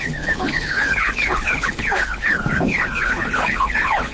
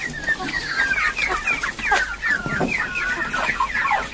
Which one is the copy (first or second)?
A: first